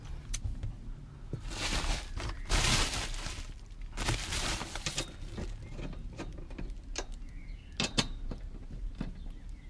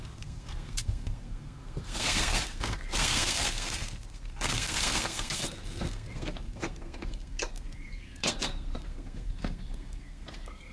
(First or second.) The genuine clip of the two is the first